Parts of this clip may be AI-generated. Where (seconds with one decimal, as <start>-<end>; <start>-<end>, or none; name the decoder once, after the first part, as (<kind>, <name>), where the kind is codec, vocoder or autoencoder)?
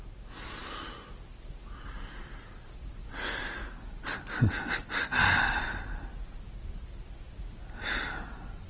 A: none